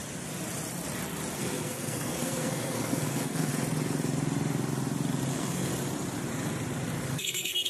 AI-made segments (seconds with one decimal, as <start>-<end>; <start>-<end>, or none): 1.3-3.5; 5.3-5.7; 7.1-7.7